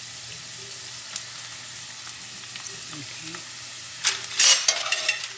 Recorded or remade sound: recorded